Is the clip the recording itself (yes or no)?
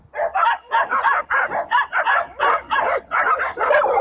yes